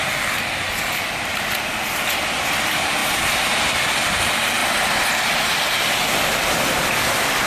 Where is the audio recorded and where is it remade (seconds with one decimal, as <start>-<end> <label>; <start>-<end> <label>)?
0.0-7.5 recorded

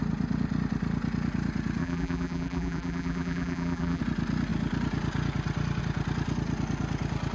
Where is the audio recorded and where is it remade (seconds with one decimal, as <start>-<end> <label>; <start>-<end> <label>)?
0.0-1.8 recorded; 1.8-4.0 remade; 4.0-7.3 recorded